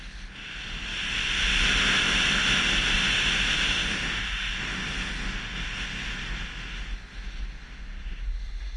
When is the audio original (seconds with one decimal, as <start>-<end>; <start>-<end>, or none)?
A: 0.0-8.8